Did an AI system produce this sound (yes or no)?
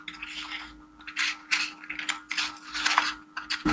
no